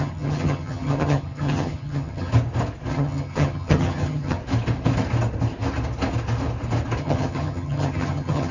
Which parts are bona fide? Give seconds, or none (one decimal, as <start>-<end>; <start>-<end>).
2.3-2.9; 4.4-7.0